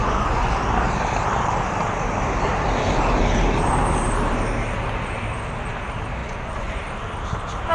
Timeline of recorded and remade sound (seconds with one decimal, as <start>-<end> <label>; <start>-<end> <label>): 0.0-0.5 remade; 0.5-6.2 recorded; 6.2-6.8 remade; 6.8-7.7 recorded